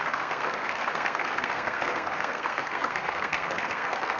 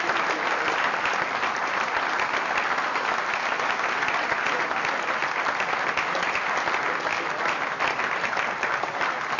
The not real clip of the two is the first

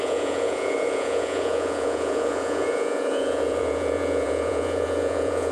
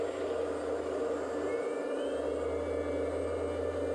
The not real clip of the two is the first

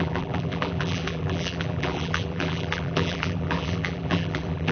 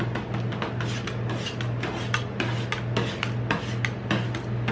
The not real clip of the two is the first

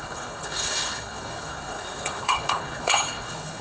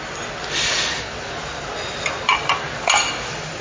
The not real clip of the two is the first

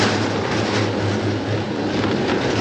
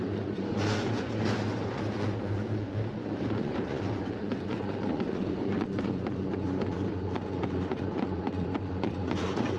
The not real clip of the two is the second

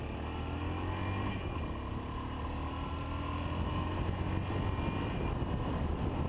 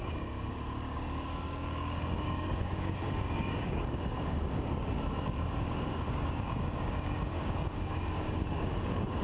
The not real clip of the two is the second